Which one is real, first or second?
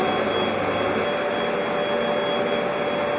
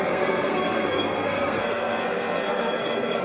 first